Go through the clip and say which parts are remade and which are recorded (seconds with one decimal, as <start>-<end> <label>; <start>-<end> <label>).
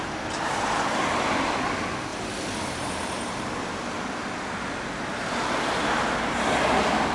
0.0-7.1 recorded